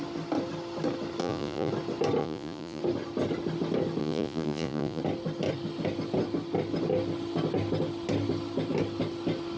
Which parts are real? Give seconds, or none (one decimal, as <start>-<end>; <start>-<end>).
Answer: 0.0-1.2; 1.7-2.2; 2.8-4.0; 5.0-9.6